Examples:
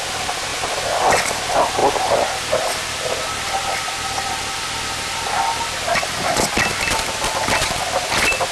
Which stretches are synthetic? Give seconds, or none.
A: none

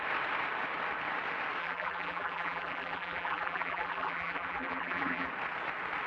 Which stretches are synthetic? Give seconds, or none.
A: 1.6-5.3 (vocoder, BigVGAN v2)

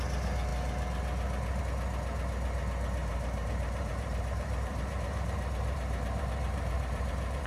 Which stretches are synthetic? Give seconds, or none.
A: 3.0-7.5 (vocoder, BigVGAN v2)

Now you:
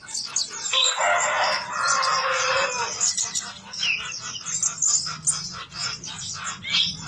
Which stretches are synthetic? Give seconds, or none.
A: none

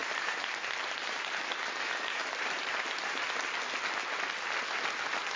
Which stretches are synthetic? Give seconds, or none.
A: 0.0-3.2 (vocoder, BigVGAN v2)

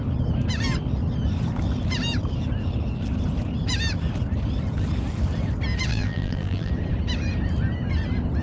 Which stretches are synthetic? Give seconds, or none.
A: 5.9-6.7 (vocoder, BigVGAN v2)

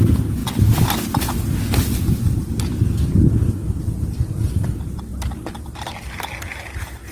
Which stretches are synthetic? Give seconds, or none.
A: 0.4-1.2 (vocoder, BigVGAN v2)

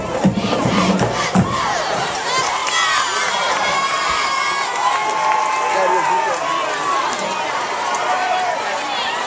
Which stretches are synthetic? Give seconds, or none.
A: 0.0-2.6 (vocoder, BigVGAN v2); 3.3-5.0; 7.5-9.3